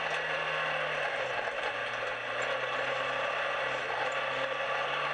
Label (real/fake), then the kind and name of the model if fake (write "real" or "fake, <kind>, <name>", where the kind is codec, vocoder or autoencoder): real